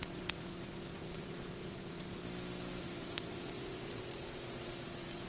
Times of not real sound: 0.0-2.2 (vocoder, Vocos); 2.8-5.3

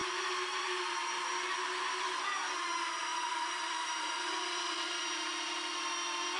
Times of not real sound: 3.1-5.0 (vocoder, BigVGAN v2)

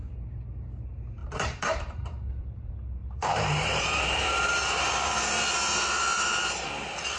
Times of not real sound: 1.2-2.4 (vocoder, BigVGAN v2); 3.0-6.7

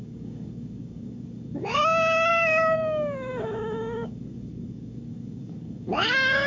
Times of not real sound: 0.0-1.8 (codec, DAC); 2.3-6.5

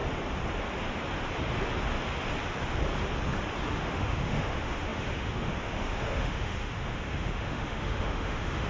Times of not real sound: 3.7-8.7 (autoencoder, DAC-VAE)

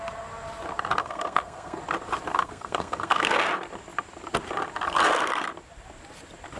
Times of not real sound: 1.0-1.8 (codec, SNAC); 2.3-3.5

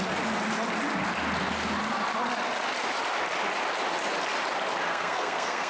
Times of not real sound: 4.9-5.7 (codec, SNAC)